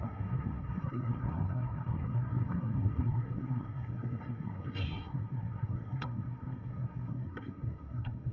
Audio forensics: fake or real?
fake